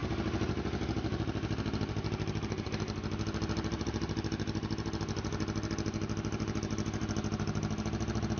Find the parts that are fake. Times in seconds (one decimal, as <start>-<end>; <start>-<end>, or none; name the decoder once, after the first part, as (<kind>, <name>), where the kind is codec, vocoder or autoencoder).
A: none